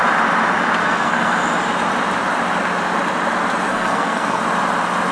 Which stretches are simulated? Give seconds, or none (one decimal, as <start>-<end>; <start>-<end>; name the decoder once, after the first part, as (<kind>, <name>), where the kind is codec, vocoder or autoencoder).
0.8-1.4 (codec, SNAC); 3.7-4.4

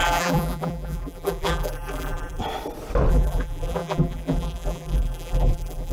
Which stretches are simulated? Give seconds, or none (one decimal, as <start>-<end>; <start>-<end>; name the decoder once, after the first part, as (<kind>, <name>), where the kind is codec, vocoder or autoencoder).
0.0-2.4 (vocoder, BigVGAN v2); 3.1-5.9

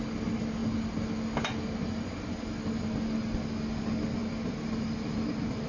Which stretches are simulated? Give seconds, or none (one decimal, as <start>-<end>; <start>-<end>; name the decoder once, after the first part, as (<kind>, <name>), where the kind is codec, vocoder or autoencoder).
4.2-5.7 (vocoder, BigVGAN v2)

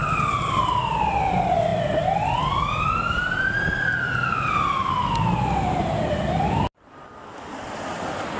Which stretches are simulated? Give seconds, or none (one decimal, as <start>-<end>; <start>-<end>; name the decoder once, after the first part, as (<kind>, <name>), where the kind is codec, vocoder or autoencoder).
0.0-0.8 (vocoder, BigVGAN v2); 1.7-2.4